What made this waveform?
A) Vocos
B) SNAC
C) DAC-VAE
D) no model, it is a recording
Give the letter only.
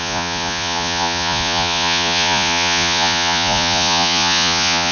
A